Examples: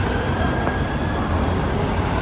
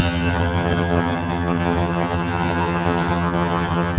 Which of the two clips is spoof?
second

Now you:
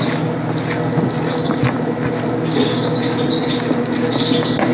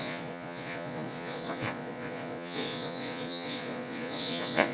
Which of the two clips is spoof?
second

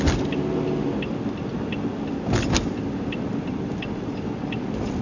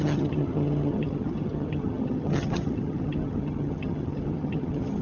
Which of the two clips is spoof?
second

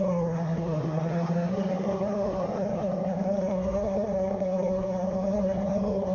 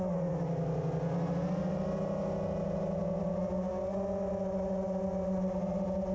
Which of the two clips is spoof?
first